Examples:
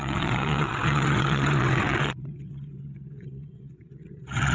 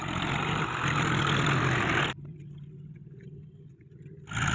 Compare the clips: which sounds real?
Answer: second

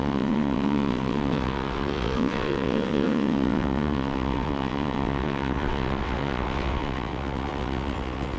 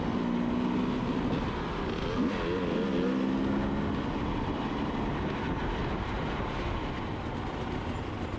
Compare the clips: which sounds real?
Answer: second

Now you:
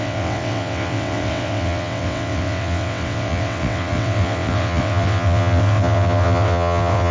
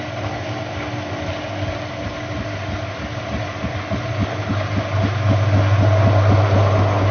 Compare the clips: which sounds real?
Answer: second